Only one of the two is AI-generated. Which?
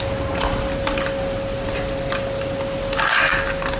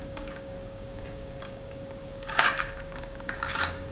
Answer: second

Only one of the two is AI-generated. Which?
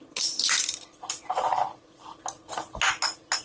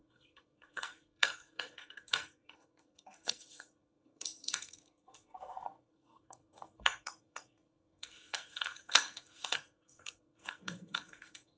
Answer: second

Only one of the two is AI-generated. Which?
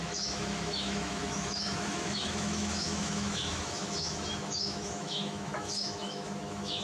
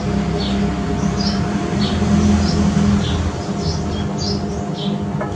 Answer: first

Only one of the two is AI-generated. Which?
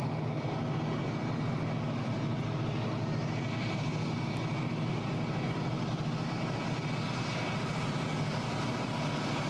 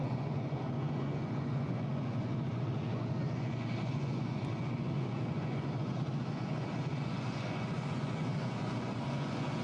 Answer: second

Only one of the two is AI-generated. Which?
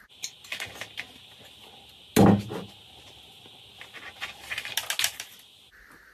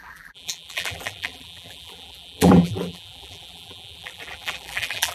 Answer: second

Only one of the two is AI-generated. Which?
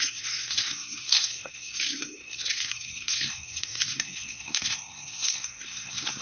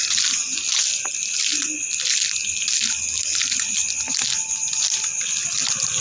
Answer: first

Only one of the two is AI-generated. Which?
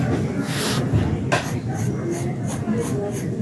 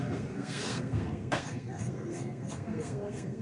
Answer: second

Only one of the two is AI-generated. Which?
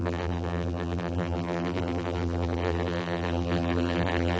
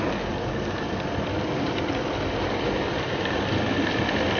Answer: first